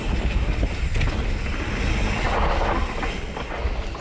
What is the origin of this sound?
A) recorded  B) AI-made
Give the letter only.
A